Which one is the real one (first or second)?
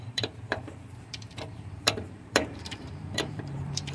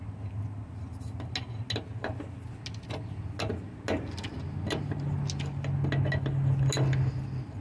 second